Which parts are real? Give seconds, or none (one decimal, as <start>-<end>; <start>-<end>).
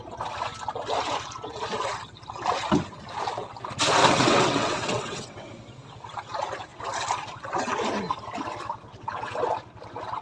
0.0-4.0; 5.5-8.9; 9.5-10.2